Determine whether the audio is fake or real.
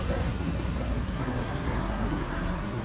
fake